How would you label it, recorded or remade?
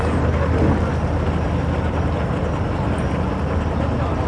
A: recorded